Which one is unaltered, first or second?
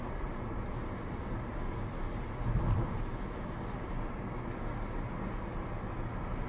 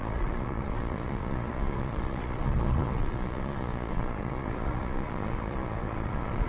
first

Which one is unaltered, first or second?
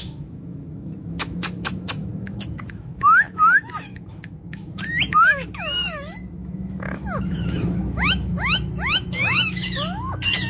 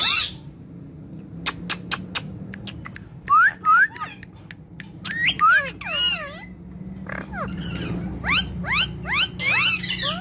second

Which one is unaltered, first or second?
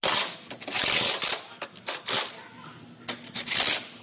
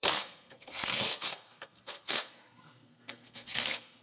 first